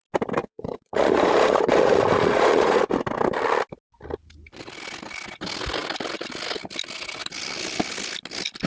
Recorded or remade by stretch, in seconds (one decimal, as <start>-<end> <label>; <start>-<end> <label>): 0.0-0.4 recorded; 0.4-2.8 remade; 2.8-8.7 recorded